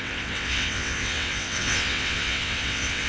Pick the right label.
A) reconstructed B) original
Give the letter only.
A